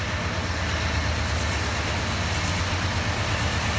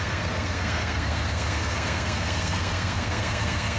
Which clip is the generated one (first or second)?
second